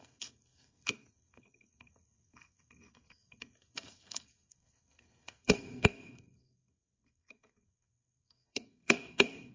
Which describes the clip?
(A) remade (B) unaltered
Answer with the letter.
A